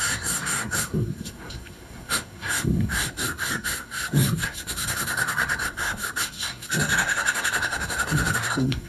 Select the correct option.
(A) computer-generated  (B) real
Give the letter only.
A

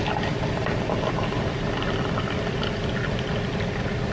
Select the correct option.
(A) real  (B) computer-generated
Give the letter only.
A